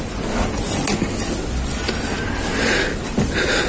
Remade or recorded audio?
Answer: recorded